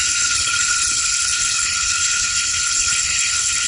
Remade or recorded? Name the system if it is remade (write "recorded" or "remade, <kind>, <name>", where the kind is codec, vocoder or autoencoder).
remade, codec, HILCodec